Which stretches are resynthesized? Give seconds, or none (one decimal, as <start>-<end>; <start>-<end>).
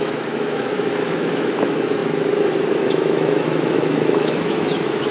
0.0-5.1